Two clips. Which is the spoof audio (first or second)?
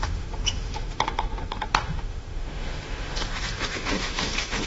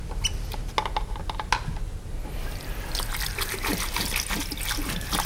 first